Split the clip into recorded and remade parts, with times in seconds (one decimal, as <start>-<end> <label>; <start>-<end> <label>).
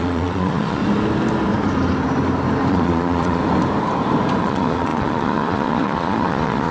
0.0-0.8 remade; 0.8-2.7 recorded; 2.7-3.4 remade; 3.4-4.4 recorded; 4.4-6.7 remade